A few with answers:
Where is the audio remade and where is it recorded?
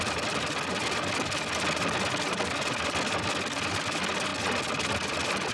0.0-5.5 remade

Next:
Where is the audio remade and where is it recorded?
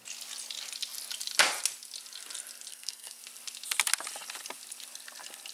0.0-2.7 recorded; 2.7-3.2 remade; 3.2-5.5 recorded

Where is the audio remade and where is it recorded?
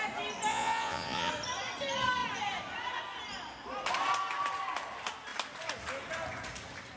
0.0-0.5 recorded; 0.5-1.3 remade; 1.3-7.0 recorded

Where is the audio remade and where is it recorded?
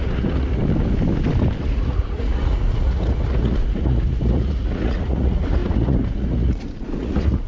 0.0-0.6 remade; 0.6-1.6 recorded; 1.6-7.5 remade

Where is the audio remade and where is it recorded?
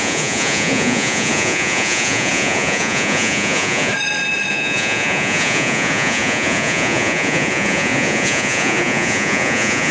0.0-3.9 remade; 3.9-4.5 recorded; 4.5-9.9 remade